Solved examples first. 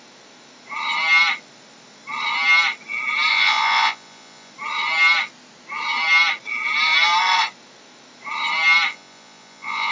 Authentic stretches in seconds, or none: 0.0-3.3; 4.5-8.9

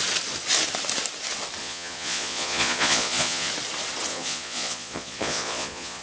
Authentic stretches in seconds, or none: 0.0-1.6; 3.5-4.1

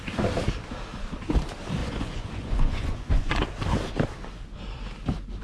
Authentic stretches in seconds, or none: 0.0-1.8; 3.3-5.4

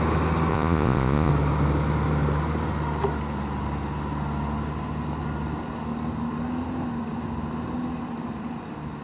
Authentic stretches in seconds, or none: 0.0-0.5; 1.3-9.0